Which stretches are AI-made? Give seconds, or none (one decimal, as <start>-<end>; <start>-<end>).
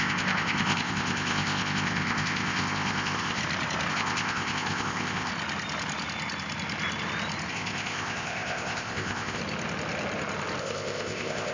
0.0-3.4; 3.9-5.3; 7.5-9.4; 10.6-11.5